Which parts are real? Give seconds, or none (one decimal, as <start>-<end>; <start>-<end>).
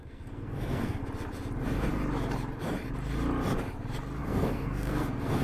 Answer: 1.0-4.2